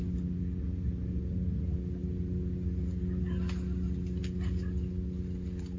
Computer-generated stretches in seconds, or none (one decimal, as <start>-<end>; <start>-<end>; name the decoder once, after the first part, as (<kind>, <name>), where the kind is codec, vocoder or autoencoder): none